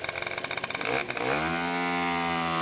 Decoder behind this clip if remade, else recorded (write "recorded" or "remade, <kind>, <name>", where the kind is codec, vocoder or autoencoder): recorded